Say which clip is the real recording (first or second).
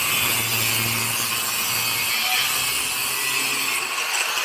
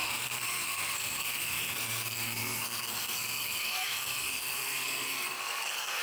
first